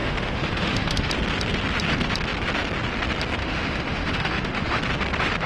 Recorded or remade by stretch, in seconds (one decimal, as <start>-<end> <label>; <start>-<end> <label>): 0.0-1.1 remade; 1.1-3.4 recorded; 3.4-4.8 remade; 4.8-5.5 recorded